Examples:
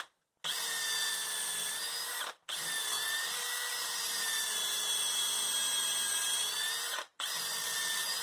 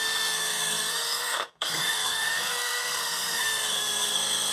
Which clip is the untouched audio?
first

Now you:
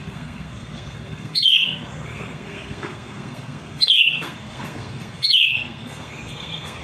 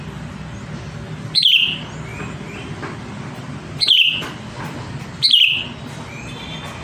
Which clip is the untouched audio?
second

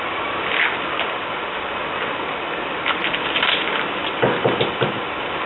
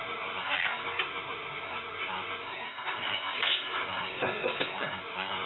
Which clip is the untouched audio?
first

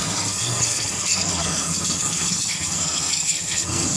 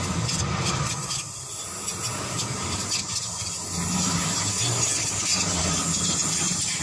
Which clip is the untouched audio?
second